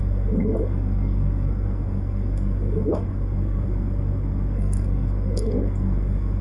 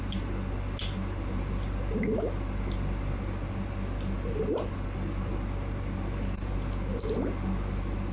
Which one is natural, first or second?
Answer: second